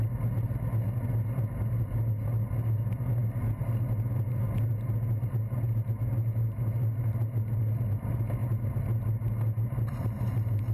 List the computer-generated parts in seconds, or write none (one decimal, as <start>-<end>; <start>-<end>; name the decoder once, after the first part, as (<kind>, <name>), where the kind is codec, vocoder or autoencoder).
none

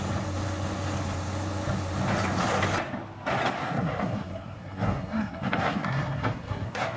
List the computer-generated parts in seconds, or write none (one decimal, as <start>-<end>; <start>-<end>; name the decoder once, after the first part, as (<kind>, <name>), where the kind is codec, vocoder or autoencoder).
3.6-7.0 (codec, SNAC)